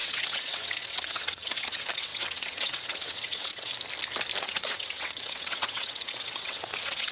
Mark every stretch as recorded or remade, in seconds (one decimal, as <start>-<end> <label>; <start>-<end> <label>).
0.0-3.7 remade; 3.7-4.4 recorded; 4.4-7.1 remade